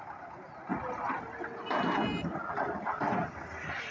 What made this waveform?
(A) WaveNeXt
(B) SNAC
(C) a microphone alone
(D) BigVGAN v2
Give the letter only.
C